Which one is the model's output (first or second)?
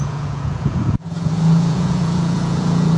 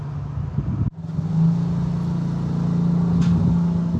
first